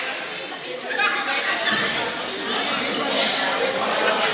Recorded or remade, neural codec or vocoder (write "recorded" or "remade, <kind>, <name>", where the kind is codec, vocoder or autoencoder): recorded